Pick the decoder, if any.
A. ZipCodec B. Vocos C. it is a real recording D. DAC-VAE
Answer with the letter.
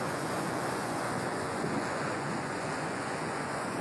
B